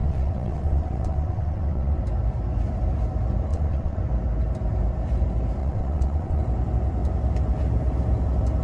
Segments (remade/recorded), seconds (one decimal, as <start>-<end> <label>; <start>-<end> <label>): 0.0-2.0 remade; 2.0-3.5 recorded; 3.5-4.0 remade; 4.0-5.6 recorded; 5.6-6.4 remade; 6.4-8.6 recorded